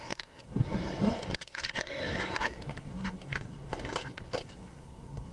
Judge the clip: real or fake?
fake